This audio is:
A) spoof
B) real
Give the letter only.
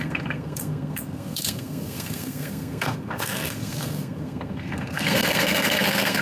A